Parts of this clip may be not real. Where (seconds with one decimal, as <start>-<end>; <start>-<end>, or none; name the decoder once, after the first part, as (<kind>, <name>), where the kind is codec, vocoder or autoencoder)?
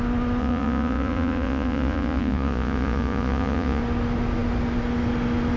0.4-3.8 (vocoder, Vocos)